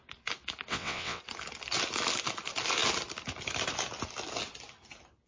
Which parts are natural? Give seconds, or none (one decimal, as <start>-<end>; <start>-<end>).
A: 0.0-0.7; 1.2-5.3